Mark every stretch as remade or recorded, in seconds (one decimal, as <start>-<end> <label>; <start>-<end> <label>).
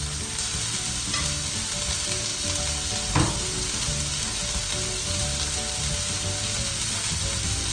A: 0.0-7.7 recorded